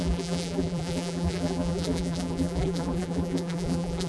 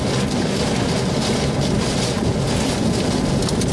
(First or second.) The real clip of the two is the second